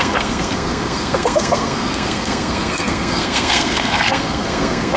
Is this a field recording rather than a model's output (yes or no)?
no